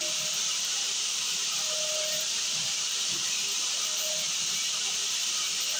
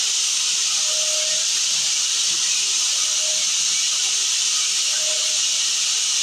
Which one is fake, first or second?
first